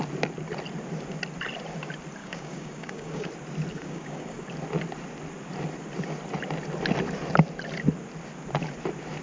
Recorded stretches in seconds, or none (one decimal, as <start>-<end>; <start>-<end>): 0.0-2.2; 3.3-3.7; 4.5-9.2